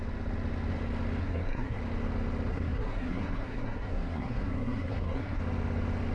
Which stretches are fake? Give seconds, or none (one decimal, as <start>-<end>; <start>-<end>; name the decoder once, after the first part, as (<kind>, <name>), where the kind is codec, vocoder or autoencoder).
1.2-1.8 (codec, SNAC); 2.5-5.4